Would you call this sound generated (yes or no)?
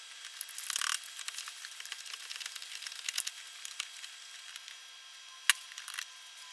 no